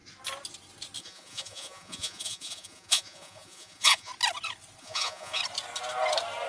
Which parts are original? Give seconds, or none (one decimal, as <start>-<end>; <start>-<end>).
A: 0.0-1.0; 4.1-4.8; 5.4-6.5